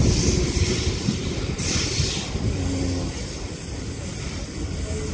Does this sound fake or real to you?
real